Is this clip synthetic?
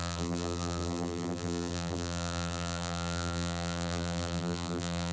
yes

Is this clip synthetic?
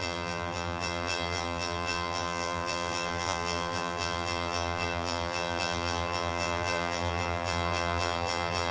yes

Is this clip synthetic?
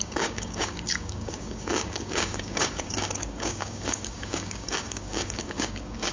yes